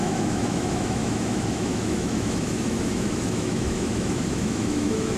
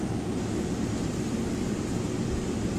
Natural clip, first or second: second